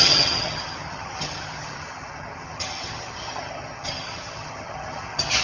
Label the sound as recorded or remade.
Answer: remade